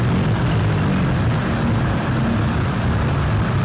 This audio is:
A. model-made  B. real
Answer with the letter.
B